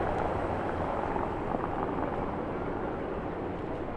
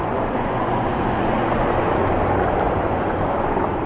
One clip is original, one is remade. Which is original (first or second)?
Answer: first